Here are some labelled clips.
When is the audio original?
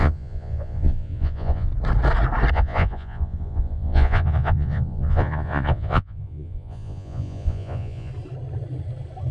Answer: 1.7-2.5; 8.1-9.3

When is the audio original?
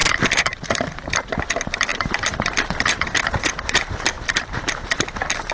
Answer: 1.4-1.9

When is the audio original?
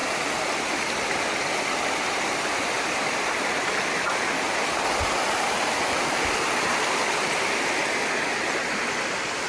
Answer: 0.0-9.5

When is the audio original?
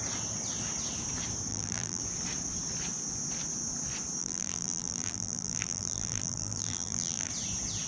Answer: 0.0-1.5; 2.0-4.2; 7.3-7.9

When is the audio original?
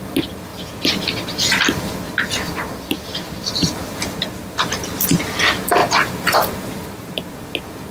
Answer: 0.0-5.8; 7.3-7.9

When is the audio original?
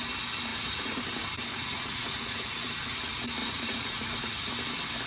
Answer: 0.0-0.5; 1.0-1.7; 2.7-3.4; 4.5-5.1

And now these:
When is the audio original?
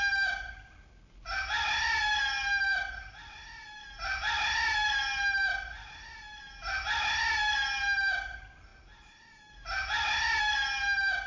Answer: 0.0-11.3